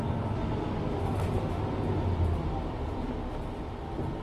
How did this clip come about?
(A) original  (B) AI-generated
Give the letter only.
A